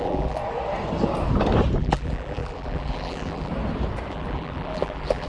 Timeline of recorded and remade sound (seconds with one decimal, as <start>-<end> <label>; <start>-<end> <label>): 0.0-0.4 remade; 0.4-1.8 recorded; 1.8-3.5 remade; 3.5-4.1 recorded; 4.1-5.3 remade